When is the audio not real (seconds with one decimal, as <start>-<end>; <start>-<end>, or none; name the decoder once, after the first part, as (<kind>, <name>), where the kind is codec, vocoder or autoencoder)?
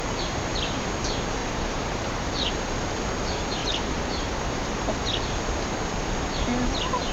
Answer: 1.4-2.5 (vocoder, BigVGAN v2); 3.6-5.2